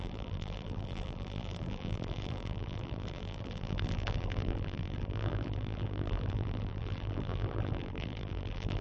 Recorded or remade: remade